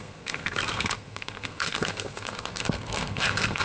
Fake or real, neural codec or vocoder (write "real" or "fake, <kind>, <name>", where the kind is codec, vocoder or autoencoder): fake, codec, SNAC